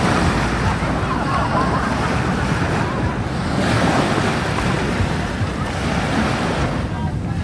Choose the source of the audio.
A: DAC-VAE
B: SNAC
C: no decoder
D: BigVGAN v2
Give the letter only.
C